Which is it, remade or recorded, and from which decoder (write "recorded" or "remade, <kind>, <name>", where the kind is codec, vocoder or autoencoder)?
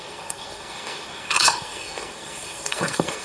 remade, codec, SNAC